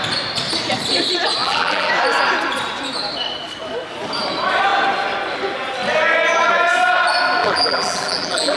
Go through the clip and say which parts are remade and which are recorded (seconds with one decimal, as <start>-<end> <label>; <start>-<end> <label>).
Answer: 0.0-1.4 recorded; 1.4-1.9 remade; 1.9-7.4 recorded; 7.4-8.6 remade